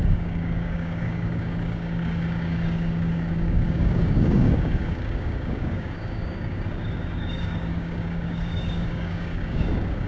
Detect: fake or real fake